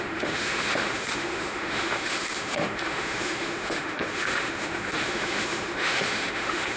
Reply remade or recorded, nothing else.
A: remade